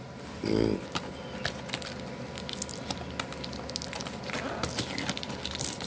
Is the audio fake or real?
real